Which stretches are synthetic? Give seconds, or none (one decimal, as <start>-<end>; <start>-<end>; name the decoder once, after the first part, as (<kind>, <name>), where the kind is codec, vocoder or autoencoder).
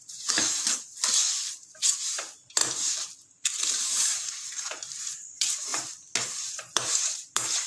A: 0.0-2.6 (vocoder, BigVGAN v2); 3.7-5.7; 6.5-7.7